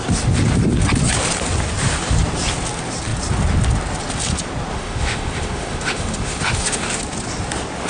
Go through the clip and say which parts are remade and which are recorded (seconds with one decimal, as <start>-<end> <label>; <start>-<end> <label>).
0.0-4.7 recorded; 4.7-7.0 remade; 7.0-7.9 recorded